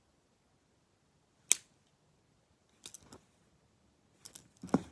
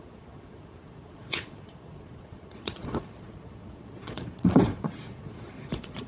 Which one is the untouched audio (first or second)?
first